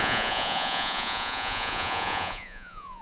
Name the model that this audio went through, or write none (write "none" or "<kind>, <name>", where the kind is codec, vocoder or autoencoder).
vocoder, Vocos